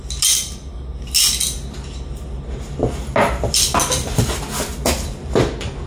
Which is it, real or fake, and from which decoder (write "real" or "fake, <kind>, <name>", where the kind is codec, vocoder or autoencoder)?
real